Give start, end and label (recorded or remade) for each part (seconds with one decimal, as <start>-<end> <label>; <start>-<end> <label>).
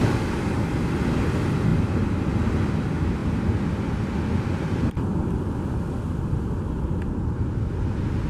0.0-0.7 remade; 0.7-8.3 recorded